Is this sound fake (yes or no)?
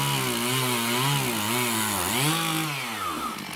no